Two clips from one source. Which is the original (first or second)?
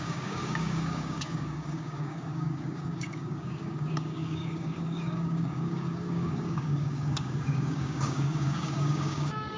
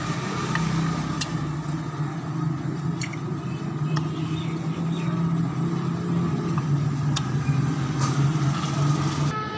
second